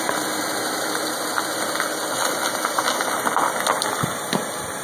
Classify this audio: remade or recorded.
recorded